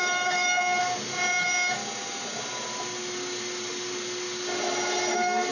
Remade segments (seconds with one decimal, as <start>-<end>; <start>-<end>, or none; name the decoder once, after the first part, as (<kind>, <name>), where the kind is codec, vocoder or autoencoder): 0.0-0.8 (autoencoder, DAC-VAE); 1.4-1.8; 5.1-5.5